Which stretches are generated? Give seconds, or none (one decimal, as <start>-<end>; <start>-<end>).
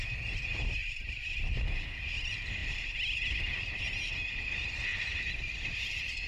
0.8-1.4; 2.6-3.8; 4.9-6.3